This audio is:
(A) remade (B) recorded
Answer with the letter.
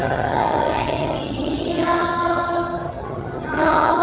A